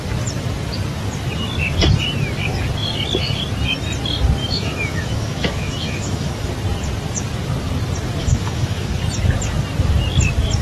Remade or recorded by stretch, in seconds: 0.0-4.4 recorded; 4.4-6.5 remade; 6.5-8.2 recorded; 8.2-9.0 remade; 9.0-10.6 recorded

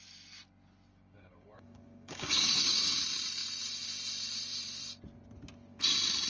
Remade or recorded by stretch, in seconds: 0.0-0.9 recorded; 0.9-3.0 remade; 3.0-6.3 recorded

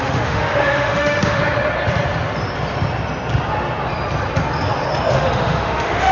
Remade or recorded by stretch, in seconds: 0.0-1.4 remade; 1.4-5.1 recorded; 5.1-6.1 remade